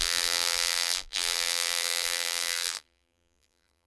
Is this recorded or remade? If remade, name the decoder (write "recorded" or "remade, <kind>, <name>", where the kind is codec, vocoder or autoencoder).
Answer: remade, vocoder, BigVGAN v2